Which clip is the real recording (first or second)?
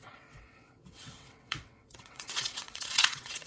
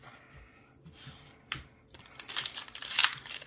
second